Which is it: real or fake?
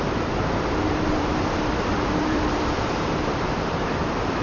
fake